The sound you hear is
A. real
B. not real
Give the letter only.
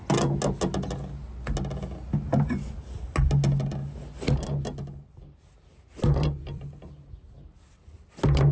A